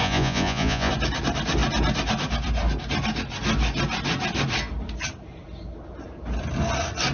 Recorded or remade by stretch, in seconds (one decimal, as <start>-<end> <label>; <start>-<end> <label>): 0.0-0.9 remade; 0.9-7.1 recorded